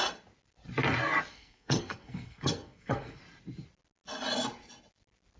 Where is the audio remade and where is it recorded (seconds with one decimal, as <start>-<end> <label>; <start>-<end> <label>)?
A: 0.0-1.3 recorded; 1.3-3.2 remade; 3.2-5.4 recorded